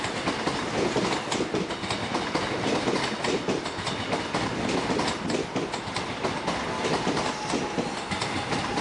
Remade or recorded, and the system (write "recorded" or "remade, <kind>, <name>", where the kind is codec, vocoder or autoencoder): recorded